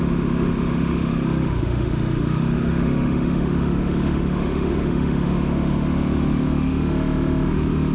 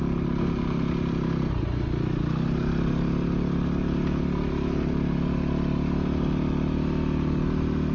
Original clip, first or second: second